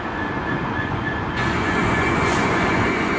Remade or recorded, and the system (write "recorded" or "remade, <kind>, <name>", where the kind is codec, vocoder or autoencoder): remade, vocoder, Vocos